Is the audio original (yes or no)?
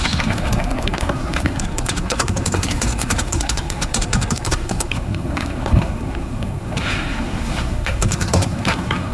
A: no